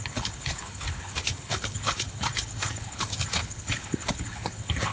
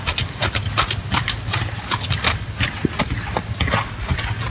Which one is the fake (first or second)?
first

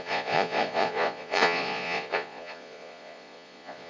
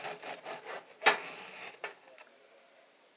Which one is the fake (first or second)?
first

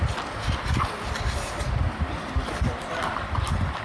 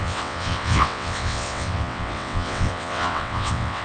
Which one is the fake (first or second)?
second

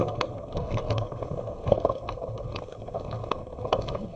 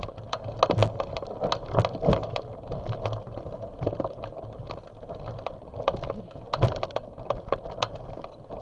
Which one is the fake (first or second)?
first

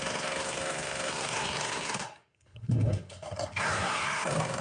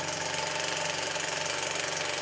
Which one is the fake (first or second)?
first